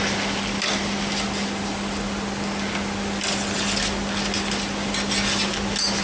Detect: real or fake real